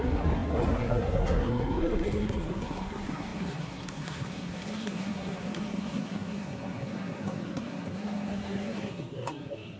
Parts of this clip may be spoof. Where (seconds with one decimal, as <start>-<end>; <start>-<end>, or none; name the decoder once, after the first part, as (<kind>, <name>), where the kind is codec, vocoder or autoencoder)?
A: 0.0-9.8 (codec, SNAC)